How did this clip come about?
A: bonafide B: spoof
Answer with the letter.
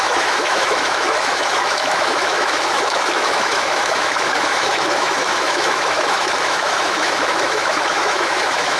B